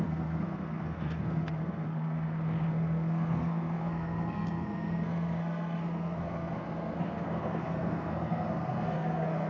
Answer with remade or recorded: remade